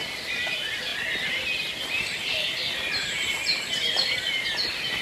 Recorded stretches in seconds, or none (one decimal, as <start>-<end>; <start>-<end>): 0.0-5.0